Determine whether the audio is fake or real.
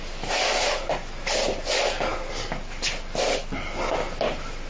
real